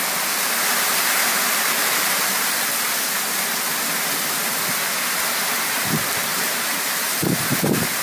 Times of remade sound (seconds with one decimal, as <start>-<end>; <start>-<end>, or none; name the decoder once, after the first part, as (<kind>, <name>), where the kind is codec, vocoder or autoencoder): 1.2-2.7 (vocoder, BigVGAN v2); 6.3-7.0